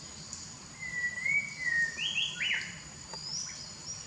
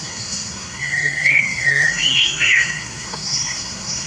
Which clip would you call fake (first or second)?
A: second